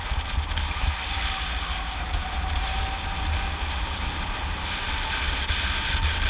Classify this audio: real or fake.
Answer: real